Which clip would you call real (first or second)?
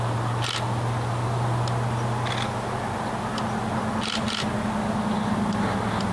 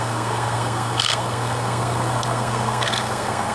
first